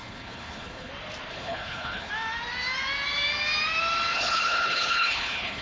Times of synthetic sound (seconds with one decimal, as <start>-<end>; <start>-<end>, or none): 0.0-0.9; 1.3-2.1; 4.1-5.6